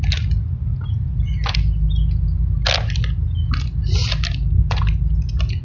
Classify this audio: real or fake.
real